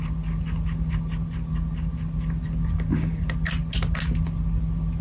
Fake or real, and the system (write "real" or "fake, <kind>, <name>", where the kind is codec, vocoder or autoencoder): real